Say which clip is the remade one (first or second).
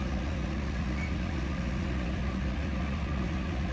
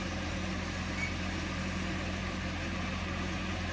first